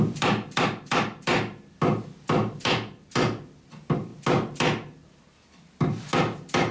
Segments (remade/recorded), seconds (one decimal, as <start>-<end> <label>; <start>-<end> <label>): 0.0-6.7 recorded